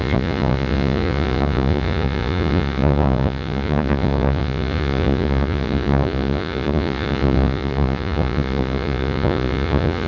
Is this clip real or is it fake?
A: fake